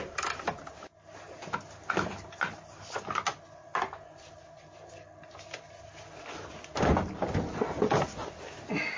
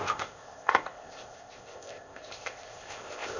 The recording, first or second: first